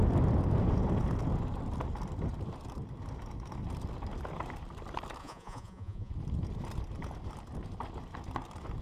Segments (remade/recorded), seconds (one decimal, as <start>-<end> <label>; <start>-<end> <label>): 0.0-5.2 recorded; 5.2-6.1 remade; 6.1-8.8 recorded